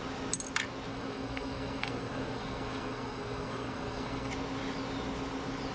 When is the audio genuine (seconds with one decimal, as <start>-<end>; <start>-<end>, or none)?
0.0-0.9; 4.3-5.7

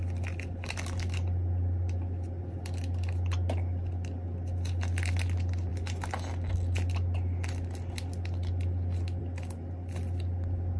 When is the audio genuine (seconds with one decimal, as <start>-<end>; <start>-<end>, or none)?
0.0-10.8

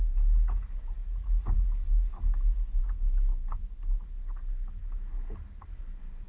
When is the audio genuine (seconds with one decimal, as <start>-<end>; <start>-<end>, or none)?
0.0-6.3

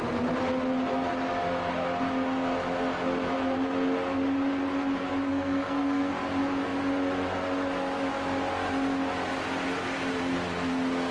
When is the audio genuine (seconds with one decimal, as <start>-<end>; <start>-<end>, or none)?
0.0-5.3; 6.1-11.1

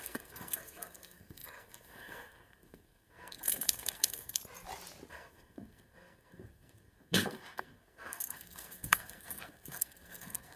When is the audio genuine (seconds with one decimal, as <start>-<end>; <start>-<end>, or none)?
4.4-5.1

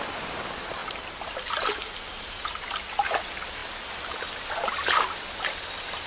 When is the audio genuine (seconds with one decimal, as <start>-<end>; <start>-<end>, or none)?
0.0-6.1